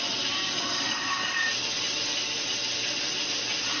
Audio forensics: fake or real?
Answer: real